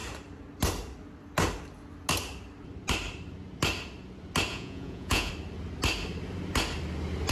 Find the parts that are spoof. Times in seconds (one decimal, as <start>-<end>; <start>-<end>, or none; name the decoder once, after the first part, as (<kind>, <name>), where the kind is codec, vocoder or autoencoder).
4.5-5.3 (vocoder, Vocos)